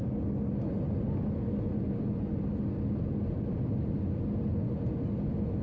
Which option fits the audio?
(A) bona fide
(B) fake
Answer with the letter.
A